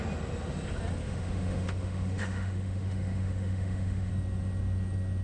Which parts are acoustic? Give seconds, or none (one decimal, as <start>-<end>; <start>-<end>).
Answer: 0.0-1.0; 4.1-5.2

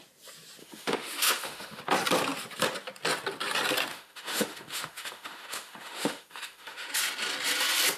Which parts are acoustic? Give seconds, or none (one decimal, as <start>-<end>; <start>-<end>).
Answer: 0.0-0.6; 1.8-3.9; 6.9-8.0

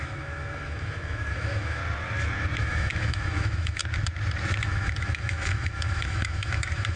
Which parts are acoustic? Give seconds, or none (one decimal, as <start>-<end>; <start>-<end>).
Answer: 1.8-2.6; 3.8-4.6

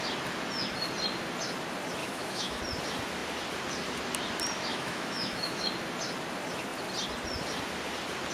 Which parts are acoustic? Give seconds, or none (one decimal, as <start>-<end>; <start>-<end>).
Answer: 0.0-2.0; 2.6-4.7; 5.7-8.3

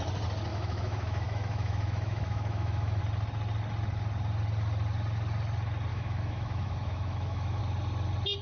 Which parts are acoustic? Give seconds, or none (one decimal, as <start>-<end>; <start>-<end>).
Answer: 0.0-0.5; 3.0-5.9; 7.6-8.4

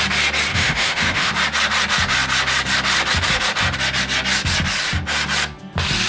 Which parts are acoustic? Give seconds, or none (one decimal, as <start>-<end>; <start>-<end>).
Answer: 0.0-0.5; 1.3-6.1